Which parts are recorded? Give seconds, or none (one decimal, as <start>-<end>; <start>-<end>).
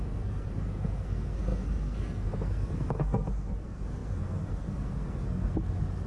none